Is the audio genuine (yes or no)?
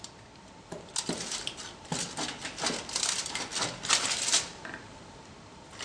yes